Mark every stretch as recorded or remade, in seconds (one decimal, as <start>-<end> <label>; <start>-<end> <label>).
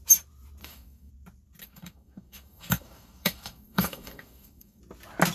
0.0-0.6 recorded; 0.6-1.1 remade; 1.1-1.6 recorded; 1.6-4.8 remade; 4.8-5.3 recorded